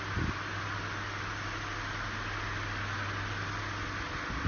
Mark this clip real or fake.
real